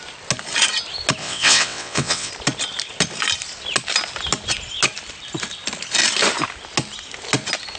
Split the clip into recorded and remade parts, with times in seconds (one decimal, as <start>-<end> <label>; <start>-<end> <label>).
0.0-1.2 recorded; 1.2-2.3 remade; 2.3-7.8 recorded